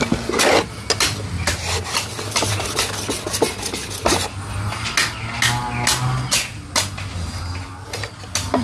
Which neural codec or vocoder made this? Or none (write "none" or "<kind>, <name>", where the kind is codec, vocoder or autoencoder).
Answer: none